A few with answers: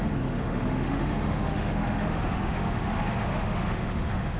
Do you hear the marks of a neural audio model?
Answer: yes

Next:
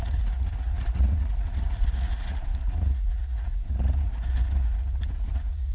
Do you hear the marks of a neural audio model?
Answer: yes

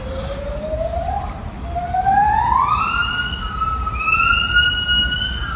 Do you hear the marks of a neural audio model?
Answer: no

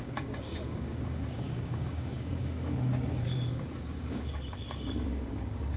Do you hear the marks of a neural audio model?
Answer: yes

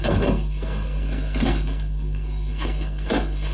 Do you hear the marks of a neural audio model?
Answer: yes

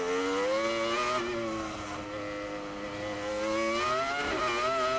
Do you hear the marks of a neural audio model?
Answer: no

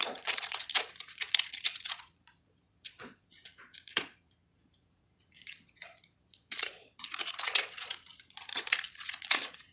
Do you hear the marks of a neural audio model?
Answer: yes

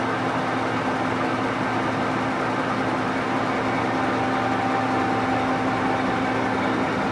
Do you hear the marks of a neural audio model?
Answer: no